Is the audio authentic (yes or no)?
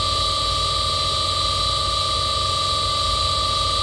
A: yes